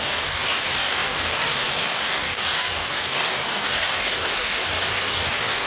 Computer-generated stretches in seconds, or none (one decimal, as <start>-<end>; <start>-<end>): 0.0-5.7